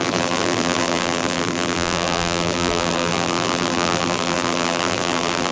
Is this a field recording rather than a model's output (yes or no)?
no